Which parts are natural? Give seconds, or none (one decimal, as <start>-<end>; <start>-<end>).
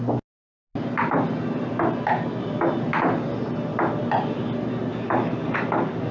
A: 0.0-4.9